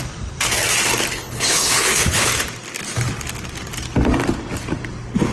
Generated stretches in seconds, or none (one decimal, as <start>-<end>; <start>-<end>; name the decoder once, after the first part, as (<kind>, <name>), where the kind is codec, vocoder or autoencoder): 1.1-2.3 (codec, HILCodec)